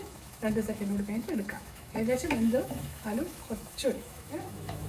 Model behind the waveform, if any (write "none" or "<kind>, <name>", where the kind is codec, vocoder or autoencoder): autoencoder, DAC-VAE